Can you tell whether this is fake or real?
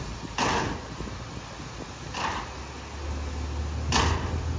real